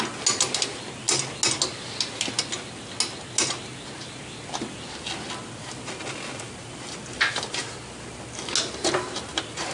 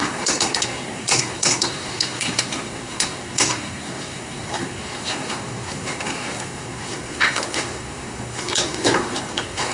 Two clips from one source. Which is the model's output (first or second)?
second